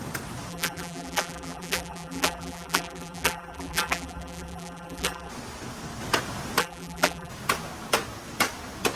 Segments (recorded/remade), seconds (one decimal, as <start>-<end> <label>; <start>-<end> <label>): 0.0-0.5 recorded; 0.5-5.3 remade; 5.3-6.6 recorded; 6.6-7.3 remade; 7.3-9.0 recorded